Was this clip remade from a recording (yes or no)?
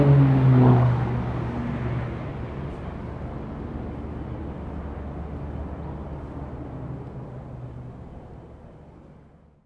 no